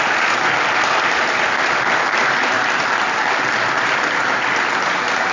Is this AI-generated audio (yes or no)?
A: no